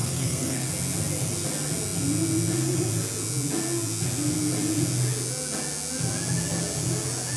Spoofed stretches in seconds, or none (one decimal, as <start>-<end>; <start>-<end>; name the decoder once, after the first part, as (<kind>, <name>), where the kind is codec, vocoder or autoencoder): 0.0-0.7 (codec, SNAC)